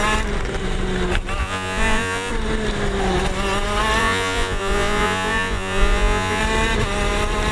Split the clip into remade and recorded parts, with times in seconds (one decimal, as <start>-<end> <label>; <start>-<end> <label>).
0.0-1.4 recorded; 1.4-2.3 remade; 2.3-4.0 recorded; 4.0-6.4 remade; 6.4-7.5 recorded